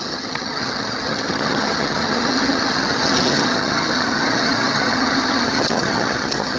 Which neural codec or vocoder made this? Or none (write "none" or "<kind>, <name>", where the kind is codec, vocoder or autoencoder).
vocoder, HiFi-GAN